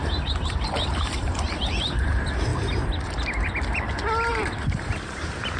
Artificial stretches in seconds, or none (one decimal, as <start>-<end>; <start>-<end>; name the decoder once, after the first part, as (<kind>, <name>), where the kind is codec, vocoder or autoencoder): 0.0-2.1 (vocoder, BigVGAN v2); 2.5-5.6